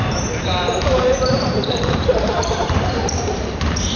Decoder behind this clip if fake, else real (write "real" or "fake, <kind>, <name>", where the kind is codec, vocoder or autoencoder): fake, vocoder, BigVGAN v2